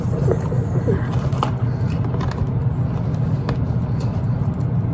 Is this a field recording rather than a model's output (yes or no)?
yes